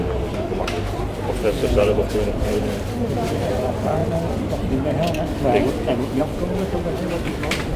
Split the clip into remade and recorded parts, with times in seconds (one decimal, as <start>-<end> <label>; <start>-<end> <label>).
0.0-1.6 recorded; 1.6-3.1 remade; 3.1-7.8 recorded